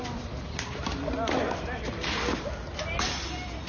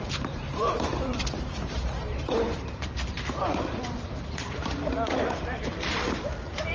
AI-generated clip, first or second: second